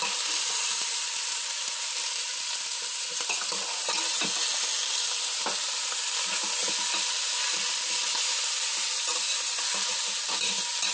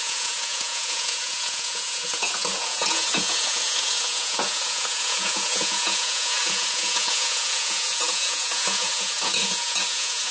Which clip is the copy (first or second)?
second